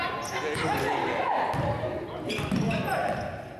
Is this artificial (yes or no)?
no